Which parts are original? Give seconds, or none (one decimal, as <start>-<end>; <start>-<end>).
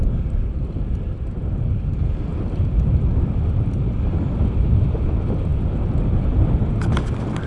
0.0-7.5